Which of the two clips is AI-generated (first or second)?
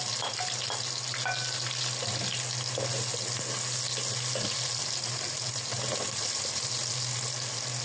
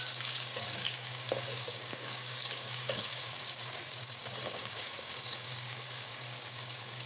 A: second